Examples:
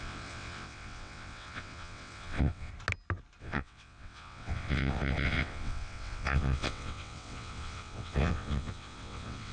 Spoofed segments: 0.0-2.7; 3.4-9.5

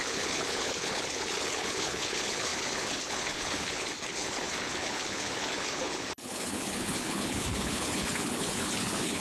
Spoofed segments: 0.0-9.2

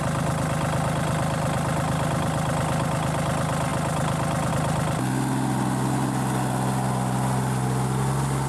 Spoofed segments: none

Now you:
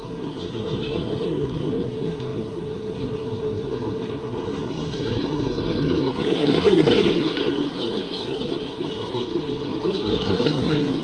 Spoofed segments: 0.0-11.0

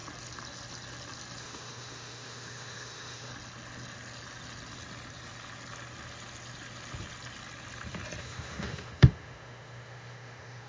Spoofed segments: 1.4-3.3; 8.2-10.7

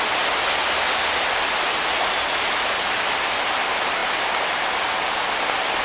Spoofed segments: none

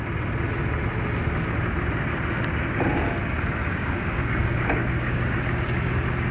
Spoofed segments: 3.6-5.4

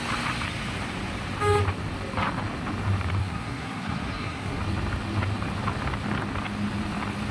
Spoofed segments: 3.2-4.6